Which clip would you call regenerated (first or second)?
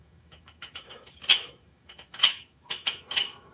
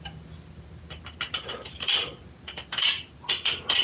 first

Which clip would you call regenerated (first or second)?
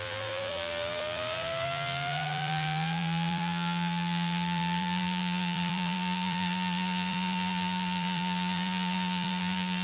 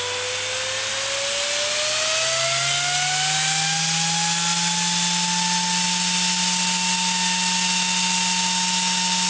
first